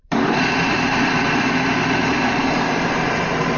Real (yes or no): no